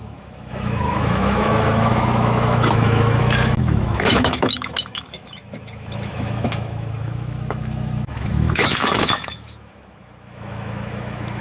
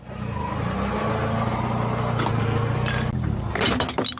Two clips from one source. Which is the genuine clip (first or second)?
second